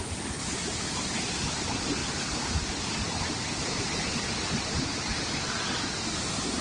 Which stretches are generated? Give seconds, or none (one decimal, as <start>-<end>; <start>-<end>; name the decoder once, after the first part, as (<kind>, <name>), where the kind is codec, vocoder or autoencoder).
0.4-1.0 (vocoder, BigVGAN v2)